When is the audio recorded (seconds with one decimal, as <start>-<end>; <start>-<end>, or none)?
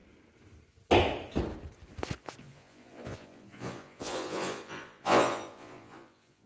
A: 0.0-2.4